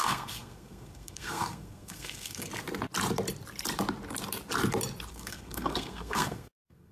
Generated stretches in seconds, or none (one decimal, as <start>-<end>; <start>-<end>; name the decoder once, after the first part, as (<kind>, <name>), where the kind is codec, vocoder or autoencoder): 0.0-2.5 (codec, SNAC); 5.1-6.9